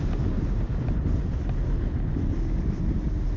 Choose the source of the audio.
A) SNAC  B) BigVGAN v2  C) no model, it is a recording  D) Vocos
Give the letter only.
C